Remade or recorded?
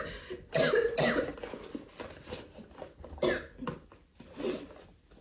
recorded